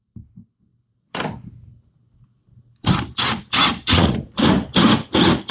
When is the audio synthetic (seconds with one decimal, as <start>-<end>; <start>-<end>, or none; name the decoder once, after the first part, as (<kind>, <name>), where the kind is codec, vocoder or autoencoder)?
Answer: 3.7-4.3 (vocoder, Vocos)